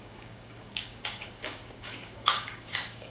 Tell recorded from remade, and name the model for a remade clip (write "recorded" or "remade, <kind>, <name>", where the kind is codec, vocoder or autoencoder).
remade, codec, DAC